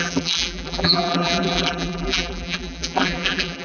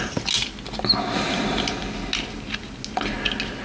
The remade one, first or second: first